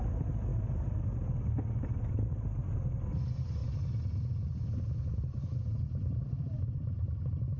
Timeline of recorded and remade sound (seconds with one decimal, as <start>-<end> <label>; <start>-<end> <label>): 0.0-7.6 recorded